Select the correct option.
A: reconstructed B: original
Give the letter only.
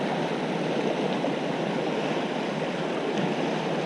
B